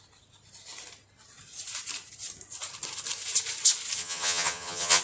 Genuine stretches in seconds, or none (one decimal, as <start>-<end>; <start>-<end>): 0.0-4.0